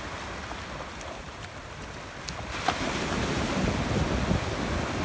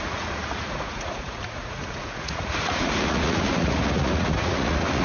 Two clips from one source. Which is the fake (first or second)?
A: second